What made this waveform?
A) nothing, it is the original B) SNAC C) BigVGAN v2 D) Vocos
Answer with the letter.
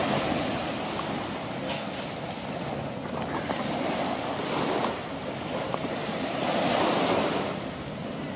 A